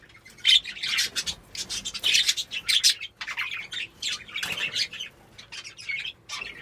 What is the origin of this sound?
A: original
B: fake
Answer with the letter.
A